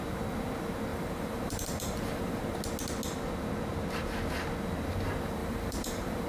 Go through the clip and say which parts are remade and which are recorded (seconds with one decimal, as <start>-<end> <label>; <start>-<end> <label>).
0.0-0.9 recorded; 0.9-2.4 remade; 2.4-5.4 recorded; 5.4-6.3 remade